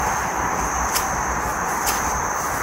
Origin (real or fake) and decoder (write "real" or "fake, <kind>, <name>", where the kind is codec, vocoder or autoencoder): fake, vocoder, BigVGAN v2